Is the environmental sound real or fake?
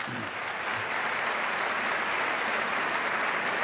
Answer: real